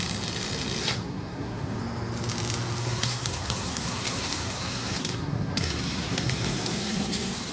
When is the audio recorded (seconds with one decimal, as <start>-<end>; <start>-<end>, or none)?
0.0-0.8; 1.8-2.8